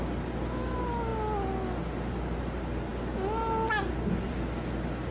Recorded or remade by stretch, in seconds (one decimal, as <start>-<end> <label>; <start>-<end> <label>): 0.0-5.1 recorded